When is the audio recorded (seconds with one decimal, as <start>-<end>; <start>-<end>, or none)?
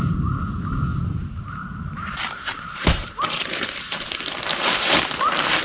0.0-0.9; 4.0-5.6